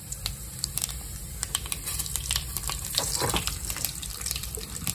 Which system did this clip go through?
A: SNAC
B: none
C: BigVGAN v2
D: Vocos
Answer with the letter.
C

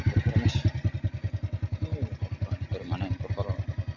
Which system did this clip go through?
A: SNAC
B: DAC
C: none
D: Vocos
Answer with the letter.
C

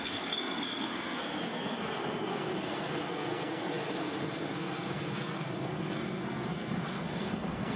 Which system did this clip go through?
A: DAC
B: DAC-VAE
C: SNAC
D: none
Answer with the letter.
C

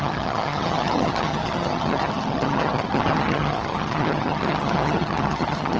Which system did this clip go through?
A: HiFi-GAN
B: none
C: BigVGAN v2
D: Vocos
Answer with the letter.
A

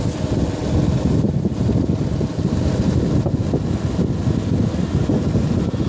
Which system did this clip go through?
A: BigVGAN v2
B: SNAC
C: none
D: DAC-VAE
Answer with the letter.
C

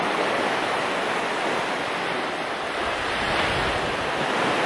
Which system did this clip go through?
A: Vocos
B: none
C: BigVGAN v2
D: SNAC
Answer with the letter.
B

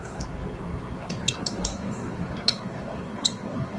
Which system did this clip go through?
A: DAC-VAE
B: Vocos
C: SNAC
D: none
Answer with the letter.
C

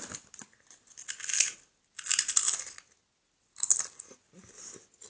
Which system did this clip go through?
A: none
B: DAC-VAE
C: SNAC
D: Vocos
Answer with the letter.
A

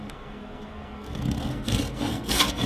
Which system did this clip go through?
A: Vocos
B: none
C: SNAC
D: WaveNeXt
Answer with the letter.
C